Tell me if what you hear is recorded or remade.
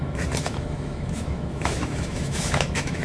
remade